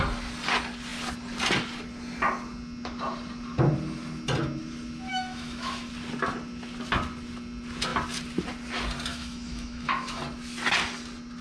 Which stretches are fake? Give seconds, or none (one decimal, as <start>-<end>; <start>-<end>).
5.1-5.9; 9.1-10.2